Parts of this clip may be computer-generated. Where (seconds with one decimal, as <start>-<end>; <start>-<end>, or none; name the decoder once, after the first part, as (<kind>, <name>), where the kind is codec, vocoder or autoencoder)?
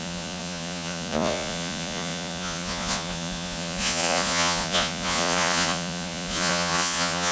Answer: 0.0-7.3 (vocoder, Vocos)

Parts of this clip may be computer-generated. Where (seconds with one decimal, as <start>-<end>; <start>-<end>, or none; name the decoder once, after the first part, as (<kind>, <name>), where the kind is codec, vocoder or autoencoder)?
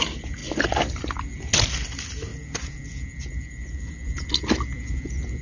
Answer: none